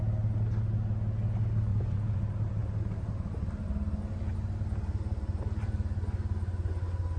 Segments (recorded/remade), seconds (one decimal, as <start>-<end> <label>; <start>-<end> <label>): 0.0-1.7 recorded; 1.7-2.2 remade; 2.2-7.2 recorded